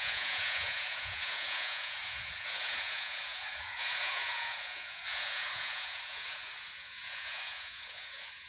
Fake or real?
fake